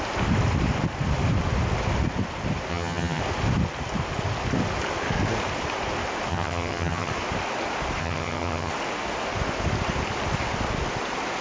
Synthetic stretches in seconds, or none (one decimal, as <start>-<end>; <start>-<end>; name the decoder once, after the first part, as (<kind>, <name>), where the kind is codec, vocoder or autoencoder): 2.7-3.2 (vocoder, HiFi-GAN); 6.3-7.1; 8.0-8.7